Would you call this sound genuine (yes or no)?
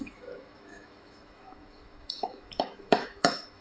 no